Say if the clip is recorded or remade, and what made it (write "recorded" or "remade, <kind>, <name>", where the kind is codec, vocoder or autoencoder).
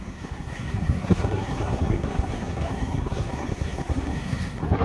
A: remade, codec, SNAC